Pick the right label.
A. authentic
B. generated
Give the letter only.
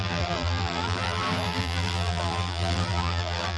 B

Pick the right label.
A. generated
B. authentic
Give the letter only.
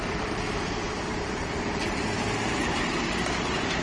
A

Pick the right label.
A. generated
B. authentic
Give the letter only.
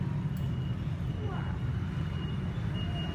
B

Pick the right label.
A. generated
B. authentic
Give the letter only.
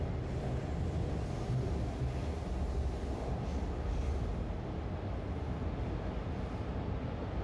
B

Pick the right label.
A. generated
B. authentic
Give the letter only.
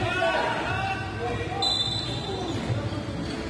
B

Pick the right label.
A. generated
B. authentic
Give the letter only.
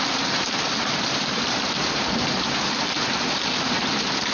A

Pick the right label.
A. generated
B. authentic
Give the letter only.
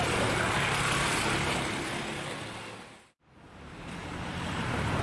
B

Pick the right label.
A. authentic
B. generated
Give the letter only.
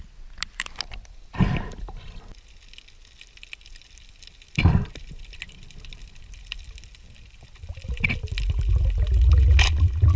A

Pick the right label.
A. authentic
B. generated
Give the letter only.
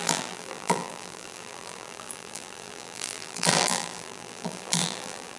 B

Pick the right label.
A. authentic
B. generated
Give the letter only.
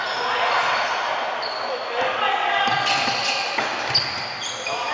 A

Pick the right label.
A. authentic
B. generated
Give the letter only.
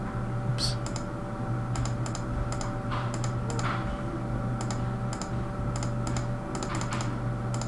A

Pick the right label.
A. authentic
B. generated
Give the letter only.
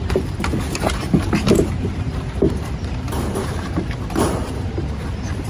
B